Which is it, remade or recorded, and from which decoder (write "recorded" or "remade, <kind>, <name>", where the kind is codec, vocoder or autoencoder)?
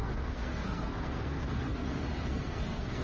remade, codec, SNAC